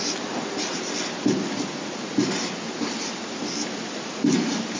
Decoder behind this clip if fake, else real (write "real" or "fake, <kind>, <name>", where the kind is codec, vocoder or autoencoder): real